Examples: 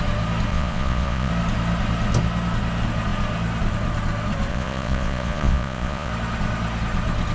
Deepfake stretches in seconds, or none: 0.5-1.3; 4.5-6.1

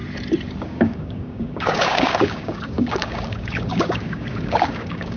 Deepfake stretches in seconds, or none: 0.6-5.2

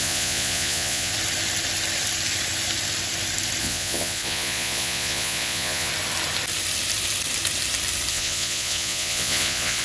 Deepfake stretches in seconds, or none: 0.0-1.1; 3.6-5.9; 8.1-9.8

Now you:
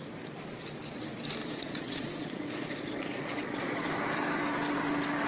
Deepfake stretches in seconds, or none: 1.4-3.9

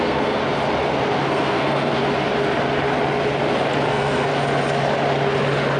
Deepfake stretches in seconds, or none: 0.0-0.4; 1.0-2.0; 3.9-4.3

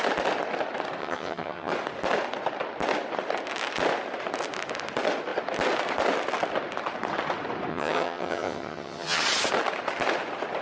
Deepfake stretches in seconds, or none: 1.0-1.7; 7.7-9.2

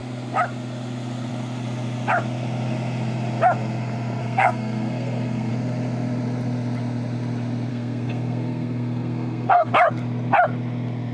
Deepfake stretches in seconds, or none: 4.2-5.5; 7.7-9.7